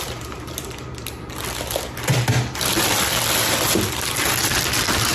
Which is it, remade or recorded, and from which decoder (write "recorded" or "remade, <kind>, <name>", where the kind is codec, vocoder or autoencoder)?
remade, vocoder, BigVGAN v2